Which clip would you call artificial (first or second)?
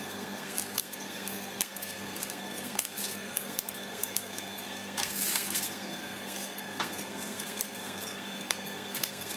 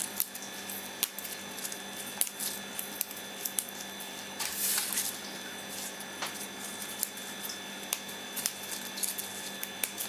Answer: first